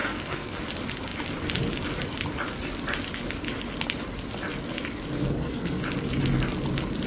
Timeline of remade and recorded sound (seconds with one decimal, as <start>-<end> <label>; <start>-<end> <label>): 0.0-0.6 remade; 0.6-5.2 recorded; 5.2-5.8 remade; 5.8-7.1 recorded

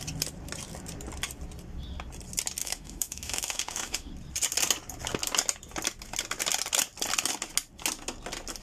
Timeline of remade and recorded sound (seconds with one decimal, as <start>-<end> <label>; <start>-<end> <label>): 0.0-2.6 recorded; 2.6-4.1 remade; 4.1-8.6 recorded

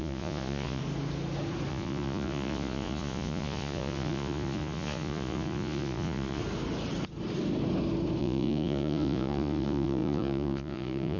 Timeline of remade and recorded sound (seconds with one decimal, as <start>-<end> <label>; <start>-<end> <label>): 0.0-0.8 remade; 0.8-1.7 recorded; 1.7-6.4 remade; 6.4-8.2 recorded; 8.2-11.2 remade

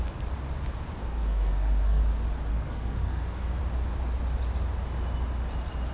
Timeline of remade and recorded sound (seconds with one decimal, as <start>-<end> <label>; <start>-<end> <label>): 0.0-1.0 recorded; 1.0-2.0 remade; 2.0-2.5 recorded; 2.5-3.6 remade; 3.6-5.9 recorded